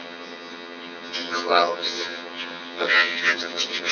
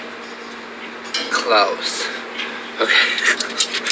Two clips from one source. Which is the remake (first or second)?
first